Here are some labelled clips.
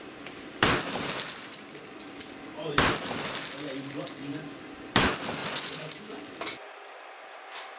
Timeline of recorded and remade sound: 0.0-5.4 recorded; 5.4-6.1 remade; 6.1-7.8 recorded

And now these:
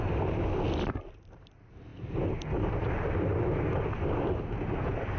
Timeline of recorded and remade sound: 0.0-5.2 recorded

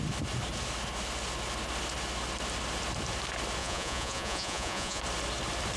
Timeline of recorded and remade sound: 0.0-3.6 recorded; 3.6-5.0 remade; 5.0-5.8 recorded

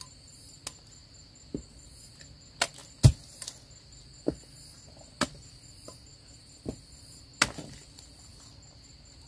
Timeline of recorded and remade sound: 0.0-9.3 recorded